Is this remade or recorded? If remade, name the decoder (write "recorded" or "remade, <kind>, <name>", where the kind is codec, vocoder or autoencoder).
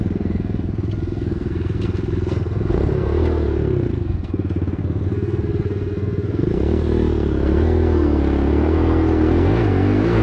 remade, codec, SNAC